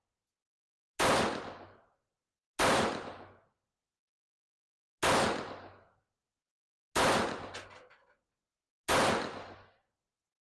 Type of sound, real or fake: real